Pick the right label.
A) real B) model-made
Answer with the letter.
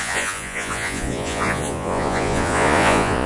B